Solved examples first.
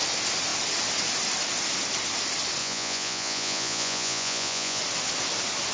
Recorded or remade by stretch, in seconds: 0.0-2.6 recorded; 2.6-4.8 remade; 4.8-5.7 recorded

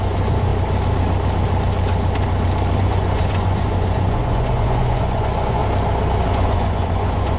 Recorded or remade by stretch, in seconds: 0.0-0.5 remade; 0.5-2.8 recorded; 2.8-5.6 remade; 5.6-6.3 recorded; 6.3-7.4 remade